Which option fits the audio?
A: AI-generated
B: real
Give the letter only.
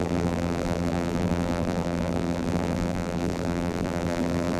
A